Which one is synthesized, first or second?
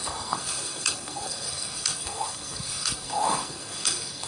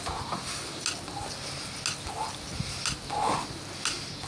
first